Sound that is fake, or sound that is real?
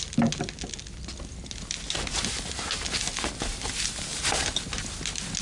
real